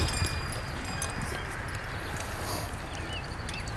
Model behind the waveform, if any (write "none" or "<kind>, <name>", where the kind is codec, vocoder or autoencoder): none